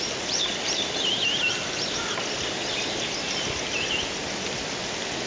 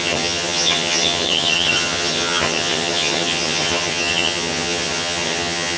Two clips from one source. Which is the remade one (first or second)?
second